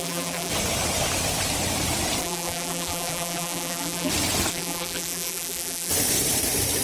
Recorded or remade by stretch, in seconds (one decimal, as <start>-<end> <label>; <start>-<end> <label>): 0.0-0.5 remade; 0.5-2.2 recorded; 2.2-4.1 remade; 4.1-4.5 recorded; 4.5-5.9 remade; 5.9-6.8 recorded